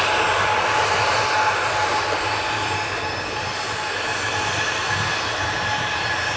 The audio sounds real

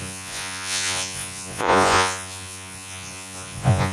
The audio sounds fake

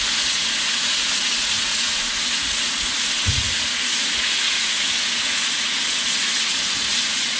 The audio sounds fake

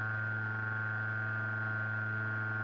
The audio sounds real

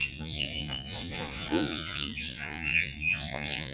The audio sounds fake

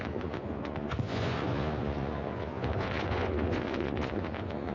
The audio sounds fake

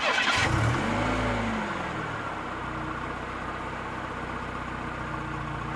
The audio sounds real